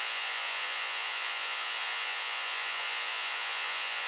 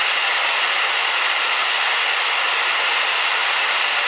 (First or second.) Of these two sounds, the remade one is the first